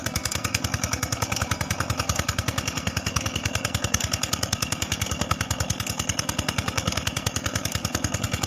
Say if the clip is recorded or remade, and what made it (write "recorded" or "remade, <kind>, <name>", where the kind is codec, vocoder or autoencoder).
remade, codec, SNAC